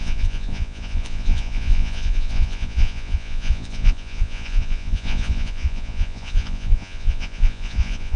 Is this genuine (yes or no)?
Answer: no